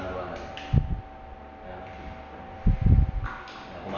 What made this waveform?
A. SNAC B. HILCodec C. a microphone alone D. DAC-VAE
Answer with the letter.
C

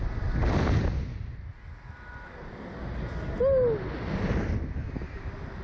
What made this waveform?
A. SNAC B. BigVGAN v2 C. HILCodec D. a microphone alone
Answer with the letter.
D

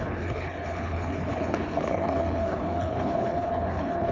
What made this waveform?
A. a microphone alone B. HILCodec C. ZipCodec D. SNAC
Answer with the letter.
B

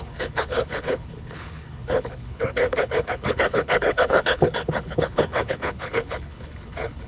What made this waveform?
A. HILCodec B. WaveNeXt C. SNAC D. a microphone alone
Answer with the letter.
A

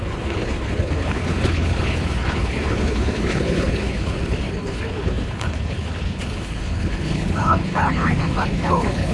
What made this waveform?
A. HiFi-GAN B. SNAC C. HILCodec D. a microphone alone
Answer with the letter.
C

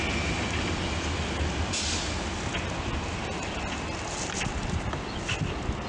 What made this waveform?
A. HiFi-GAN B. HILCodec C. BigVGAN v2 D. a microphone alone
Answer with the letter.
D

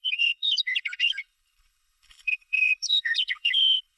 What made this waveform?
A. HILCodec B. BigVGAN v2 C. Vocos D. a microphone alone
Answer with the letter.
A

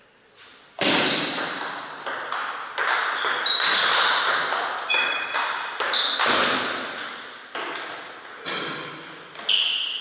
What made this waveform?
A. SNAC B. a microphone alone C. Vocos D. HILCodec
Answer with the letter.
B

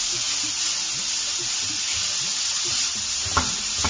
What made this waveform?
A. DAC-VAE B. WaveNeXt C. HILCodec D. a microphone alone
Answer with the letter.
D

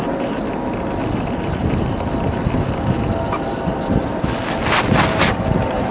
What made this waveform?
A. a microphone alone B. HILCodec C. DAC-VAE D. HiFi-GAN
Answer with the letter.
A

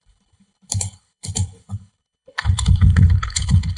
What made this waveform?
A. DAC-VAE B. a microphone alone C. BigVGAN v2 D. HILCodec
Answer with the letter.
D